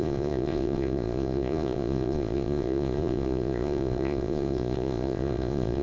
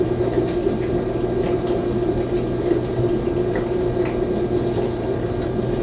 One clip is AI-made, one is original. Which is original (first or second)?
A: second